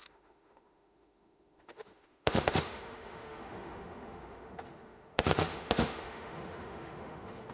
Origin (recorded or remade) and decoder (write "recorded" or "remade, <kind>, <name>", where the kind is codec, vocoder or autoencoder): remade, autoencoder, DAC-VAE